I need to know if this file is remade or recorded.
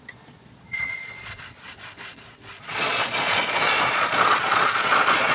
remade